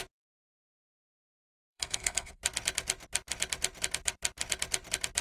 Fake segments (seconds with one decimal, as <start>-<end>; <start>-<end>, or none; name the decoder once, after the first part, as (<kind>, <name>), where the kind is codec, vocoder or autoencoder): 1.6-2.4 (codec, SNAC)